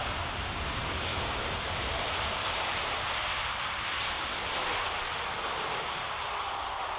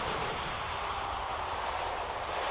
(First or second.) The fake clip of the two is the second